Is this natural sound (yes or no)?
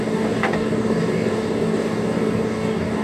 no